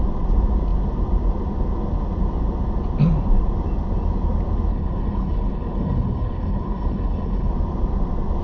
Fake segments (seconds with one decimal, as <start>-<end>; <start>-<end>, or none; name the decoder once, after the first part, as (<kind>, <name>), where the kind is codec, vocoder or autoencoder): 4.7-7.5 (codec, HILCodec)